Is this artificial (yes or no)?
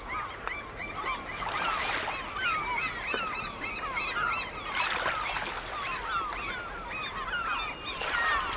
no